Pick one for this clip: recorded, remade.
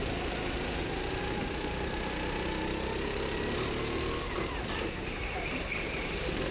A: recorded